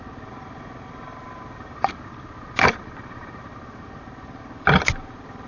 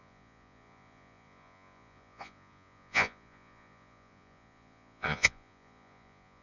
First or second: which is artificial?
second